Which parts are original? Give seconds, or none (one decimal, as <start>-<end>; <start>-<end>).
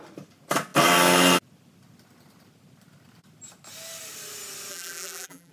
0.0-4.7